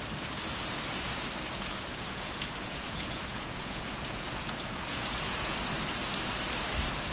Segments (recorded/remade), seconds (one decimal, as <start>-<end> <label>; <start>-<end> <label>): 0.0-1.5 recorded; 1.5-5.6 remade; 5.6-7.1 recorded

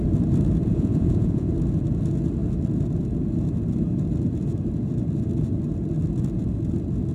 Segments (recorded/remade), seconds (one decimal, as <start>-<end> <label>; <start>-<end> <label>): 0.0-0.7 recorded; 0.7-1.5 remade; 1.5-7.1 recorded